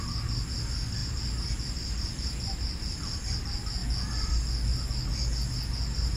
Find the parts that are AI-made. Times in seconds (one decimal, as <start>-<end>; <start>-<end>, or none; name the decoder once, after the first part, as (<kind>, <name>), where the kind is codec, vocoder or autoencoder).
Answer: none